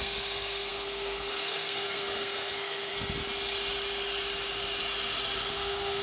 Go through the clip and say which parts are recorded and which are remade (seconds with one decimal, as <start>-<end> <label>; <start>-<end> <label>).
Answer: 0.0-2.9 remade; 2.9-5.5 recorded; 5.5-6.0 remade